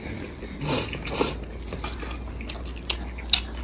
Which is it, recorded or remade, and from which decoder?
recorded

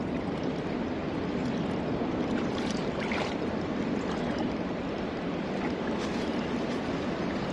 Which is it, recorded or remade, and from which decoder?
recorded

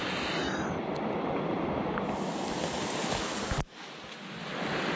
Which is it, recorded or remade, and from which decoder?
recorded